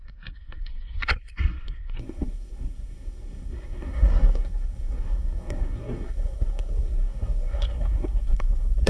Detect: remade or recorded remade